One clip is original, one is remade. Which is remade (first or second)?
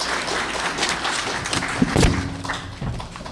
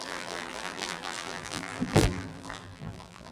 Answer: second